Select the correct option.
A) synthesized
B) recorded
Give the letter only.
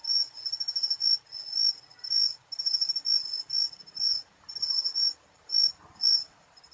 B